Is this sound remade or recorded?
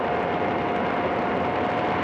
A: recorded